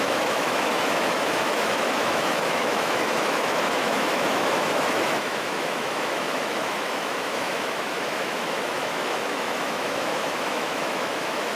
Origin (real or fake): fake